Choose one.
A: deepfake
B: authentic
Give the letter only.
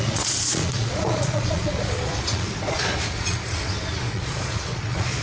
A